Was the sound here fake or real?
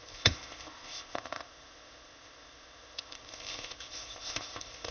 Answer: fake